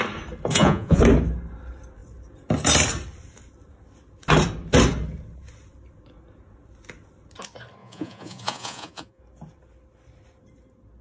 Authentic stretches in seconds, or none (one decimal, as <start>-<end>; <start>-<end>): 0.0-0.5; 1.0-7.8; 9.2-11.0